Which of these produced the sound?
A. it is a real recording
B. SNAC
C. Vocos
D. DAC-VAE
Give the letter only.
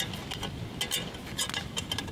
A